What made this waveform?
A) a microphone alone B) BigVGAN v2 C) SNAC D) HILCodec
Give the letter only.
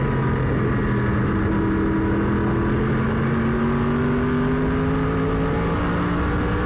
A